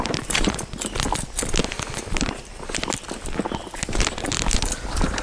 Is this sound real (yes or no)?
yes